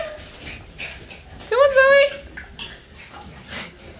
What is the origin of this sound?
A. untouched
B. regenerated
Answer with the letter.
A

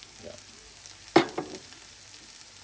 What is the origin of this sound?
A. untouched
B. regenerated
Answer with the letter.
A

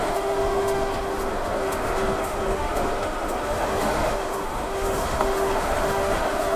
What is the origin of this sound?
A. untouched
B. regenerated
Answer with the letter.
B